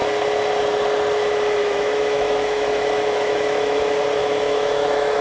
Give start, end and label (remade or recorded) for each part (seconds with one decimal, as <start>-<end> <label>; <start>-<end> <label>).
0.0-1.6 recorded; 1.6-3.8 remade; 3.8-4.2 recorded; 4.2-5.2 remade